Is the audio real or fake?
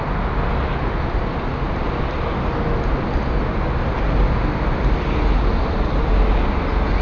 real